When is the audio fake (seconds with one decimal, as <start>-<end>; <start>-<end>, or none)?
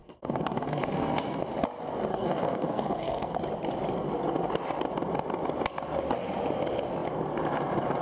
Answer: 0.0-1.4; 2.1-3.4